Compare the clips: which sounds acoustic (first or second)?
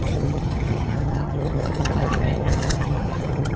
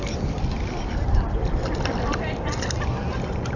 second